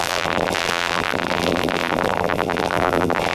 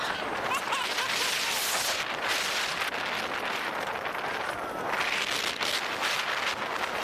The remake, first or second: first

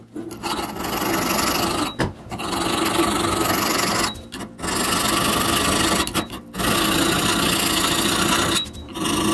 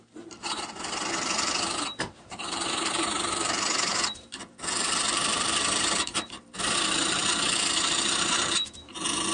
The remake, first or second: second